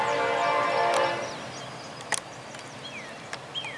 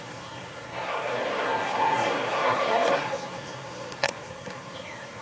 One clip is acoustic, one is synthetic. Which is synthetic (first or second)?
second